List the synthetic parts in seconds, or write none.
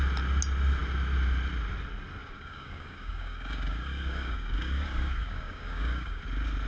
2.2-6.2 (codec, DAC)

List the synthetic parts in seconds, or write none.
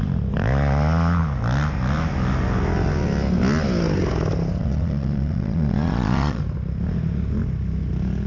4.6-6.4 (vocoder, Vocos)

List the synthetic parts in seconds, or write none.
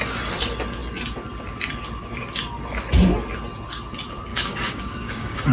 4.3-5.5 (codec, DAC)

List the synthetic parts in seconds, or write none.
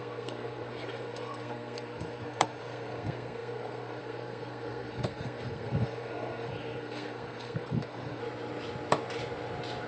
0.0-8.2 (codec, SNAC)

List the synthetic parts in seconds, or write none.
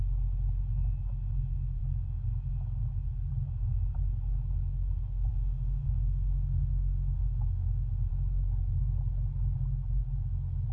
5.3-8.1 (autoencoder, DAC-VAE)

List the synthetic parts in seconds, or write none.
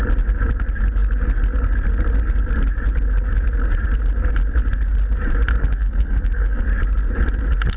5.6-6.6 (codec, SNAC)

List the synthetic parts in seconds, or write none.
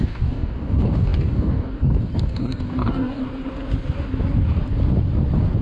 0.0-3.2 (codec, DAC)